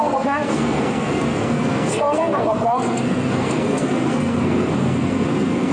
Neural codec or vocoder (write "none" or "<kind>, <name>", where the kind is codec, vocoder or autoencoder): codec, SNAC